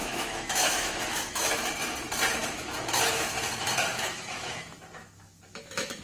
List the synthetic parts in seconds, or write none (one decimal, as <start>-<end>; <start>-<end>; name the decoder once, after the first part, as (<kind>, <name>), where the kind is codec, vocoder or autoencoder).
0.0-1.7 (autoencoder, DAC-VAE); 2.4-6.0